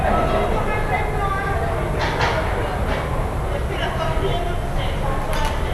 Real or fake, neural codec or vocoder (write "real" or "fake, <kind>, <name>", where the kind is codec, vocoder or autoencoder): real